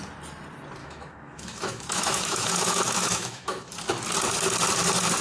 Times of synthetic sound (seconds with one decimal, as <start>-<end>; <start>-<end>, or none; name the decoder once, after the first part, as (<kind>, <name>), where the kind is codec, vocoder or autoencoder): 0.8-3.8 (autoencoder, DAC-VAE)